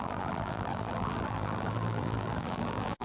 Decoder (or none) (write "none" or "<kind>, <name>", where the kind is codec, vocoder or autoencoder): vocoder, BigVGAN v2